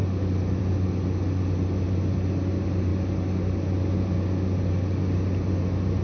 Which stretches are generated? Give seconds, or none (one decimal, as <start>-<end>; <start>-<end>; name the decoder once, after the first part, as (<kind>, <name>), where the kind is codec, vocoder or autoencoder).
none